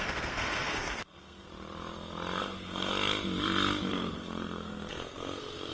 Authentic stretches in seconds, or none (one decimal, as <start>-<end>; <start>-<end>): 1.5-2.4; 2.9-3.9